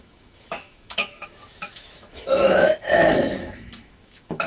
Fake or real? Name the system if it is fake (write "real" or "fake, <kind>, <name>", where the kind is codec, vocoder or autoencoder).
fake, autoencoder, DAC-VAE